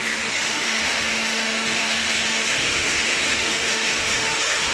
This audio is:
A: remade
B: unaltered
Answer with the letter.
A